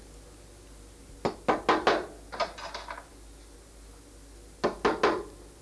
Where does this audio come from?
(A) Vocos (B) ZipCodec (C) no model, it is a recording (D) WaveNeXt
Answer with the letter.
C